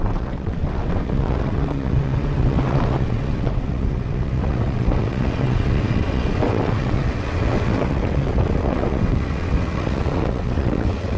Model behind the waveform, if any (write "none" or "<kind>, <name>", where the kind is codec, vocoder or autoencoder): vocoder, WaveNeXt